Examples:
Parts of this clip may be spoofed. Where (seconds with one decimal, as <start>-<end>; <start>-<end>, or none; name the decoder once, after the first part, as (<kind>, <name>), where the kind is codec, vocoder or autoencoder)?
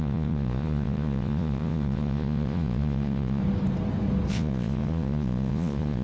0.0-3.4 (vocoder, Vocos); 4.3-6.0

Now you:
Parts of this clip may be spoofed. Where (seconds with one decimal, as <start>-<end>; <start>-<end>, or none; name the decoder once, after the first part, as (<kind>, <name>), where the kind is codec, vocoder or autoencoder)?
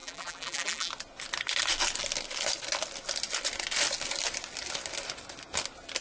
0.0-0.9 (vocoder, BigVGAN v2)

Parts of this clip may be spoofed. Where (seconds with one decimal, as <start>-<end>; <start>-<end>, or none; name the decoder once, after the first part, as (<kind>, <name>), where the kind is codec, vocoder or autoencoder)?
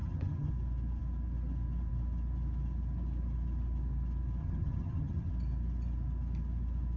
0.0-0.5 (vocoder, HiFi-GAN); 4.4-5.3